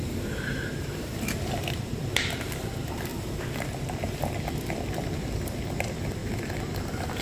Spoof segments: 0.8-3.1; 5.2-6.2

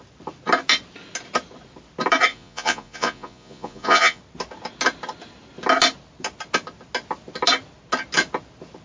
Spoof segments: 2.3-4.2

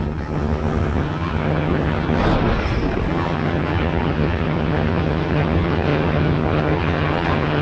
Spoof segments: 0.0-2.2; 3.1-7.6

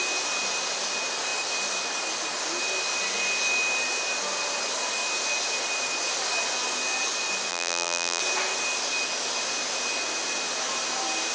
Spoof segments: 7.5-8.2

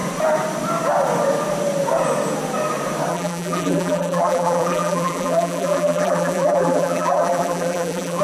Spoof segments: 3.1-8.2

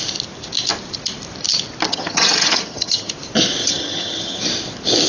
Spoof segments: 1.9-3.1; 3.6-4.4

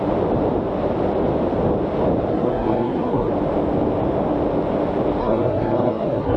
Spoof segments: 2.3-3.3; 5.2-6.4

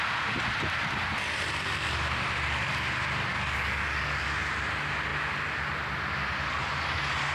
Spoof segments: 3.3-4.5